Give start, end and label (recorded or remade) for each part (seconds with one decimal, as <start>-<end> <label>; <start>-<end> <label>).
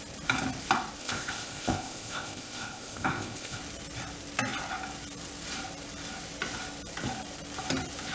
0.0-1.0 recorded; 1.0-3.6 remade; 3.6-8.1 recorded